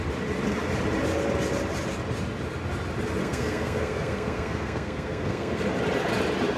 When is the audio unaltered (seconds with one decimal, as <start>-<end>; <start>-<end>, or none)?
0.0-3.2; 5.6-6.6